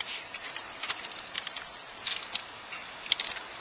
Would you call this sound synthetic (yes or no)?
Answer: yes